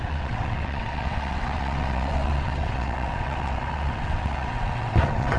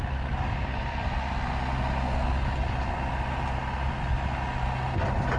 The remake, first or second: first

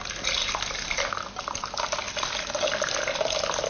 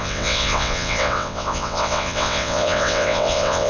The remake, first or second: second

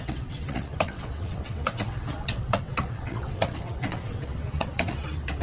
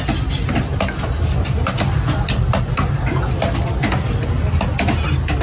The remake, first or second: first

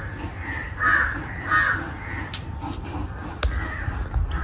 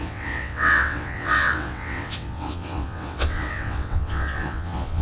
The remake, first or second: second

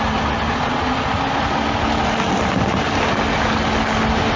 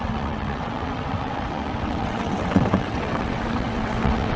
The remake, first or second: second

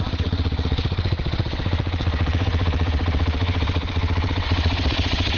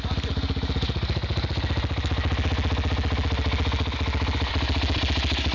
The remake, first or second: first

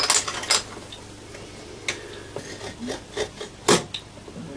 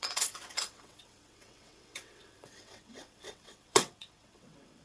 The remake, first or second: second